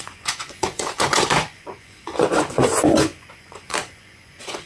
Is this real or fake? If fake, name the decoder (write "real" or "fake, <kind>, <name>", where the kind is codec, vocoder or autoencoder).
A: fake, vocoder, Vocos